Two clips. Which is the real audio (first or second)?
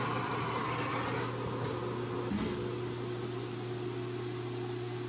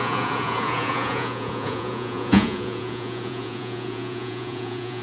first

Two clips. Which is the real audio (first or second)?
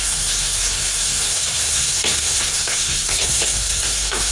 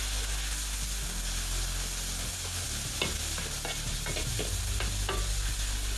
second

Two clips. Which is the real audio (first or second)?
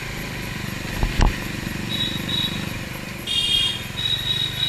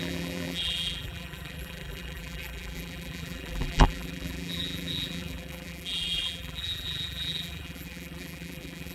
first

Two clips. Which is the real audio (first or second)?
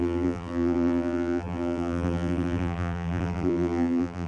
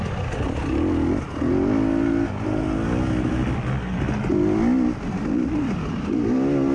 second